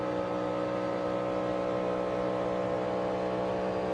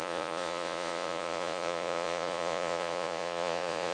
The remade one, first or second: second